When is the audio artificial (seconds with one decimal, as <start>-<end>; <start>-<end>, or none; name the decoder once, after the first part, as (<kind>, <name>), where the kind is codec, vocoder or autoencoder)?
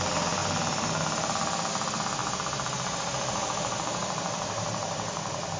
2.2-5.6 (vocoder, BigVGAN v2)